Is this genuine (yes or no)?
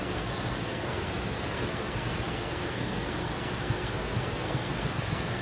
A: no